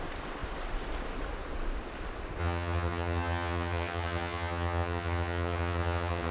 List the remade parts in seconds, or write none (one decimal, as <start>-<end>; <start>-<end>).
2.4-6.3